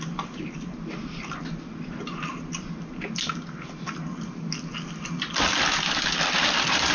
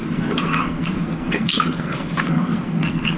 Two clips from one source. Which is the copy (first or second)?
second